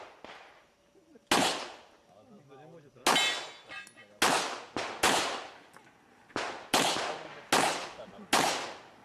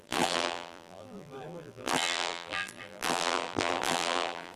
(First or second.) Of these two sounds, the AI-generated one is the second